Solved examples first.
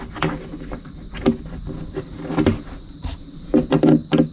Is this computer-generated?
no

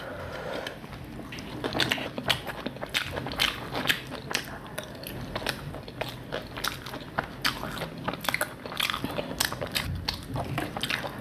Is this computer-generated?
no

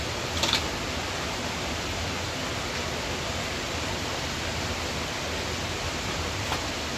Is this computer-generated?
no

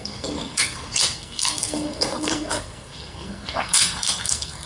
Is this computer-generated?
yes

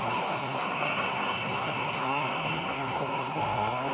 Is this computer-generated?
yes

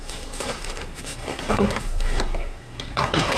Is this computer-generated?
yes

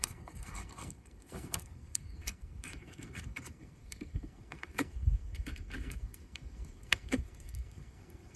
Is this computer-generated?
yes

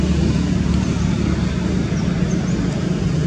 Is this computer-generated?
no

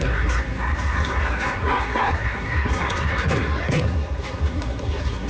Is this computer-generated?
yes